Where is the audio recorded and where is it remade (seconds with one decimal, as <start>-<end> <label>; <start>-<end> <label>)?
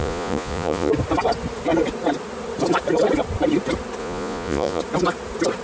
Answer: 0.0-0.9 remade; 0.9-4.0 recorded; 4.0-4.8 remade; 4.8-5.6 recorded